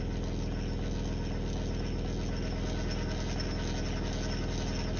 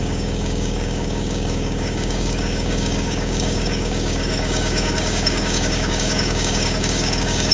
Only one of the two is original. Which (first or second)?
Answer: first